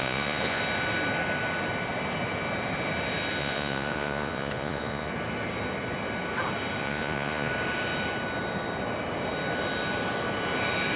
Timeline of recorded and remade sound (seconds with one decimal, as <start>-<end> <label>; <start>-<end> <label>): 0.0-0.6 remade; 0.6-3.4 recorded; 3.4-5.1 remade; 5.1-6.8 recorded; 6.8-7.5 remade; 7.5-11.0 recorded